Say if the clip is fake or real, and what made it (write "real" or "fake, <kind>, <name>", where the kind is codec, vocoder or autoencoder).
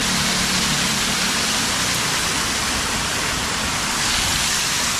real